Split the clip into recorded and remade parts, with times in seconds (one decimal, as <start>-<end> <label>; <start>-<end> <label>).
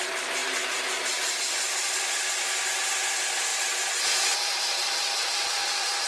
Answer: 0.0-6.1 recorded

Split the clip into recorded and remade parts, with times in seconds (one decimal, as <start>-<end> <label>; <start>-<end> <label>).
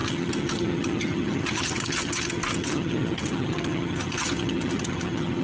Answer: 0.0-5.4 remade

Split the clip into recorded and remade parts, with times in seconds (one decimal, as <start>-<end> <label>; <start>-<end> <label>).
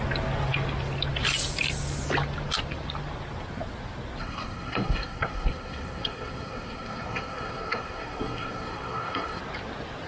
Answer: 0.0-4.2 recorded; 4.2-9.4 remade; 9.4-10.1 recorded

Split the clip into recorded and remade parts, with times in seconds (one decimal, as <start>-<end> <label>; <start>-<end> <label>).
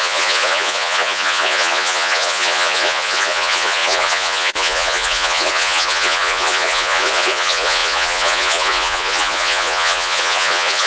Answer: 0.0-10.9 remade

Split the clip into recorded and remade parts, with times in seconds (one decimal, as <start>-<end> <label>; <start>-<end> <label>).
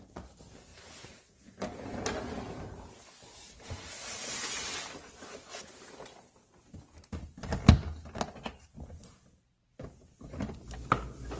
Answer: 0.0-0.7 recorded; 0.7-2.0 remade; 2.0-11.4 recorded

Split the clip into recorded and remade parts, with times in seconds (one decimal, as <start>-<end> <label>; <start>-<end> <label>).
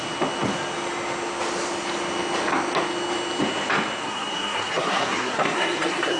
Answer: 0.0-4.0 recorded; 4.0-6.2 remade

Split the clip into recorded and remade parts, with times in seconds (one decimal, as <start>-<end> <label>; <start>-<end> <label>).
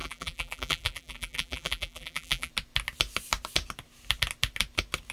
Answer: 0.0-2.5 remade; 2.5-5.1 recorded